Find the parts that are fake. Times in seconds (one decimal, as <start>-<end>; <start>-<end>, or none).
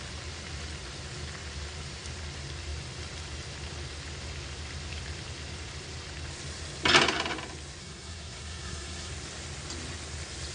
7.8-9.1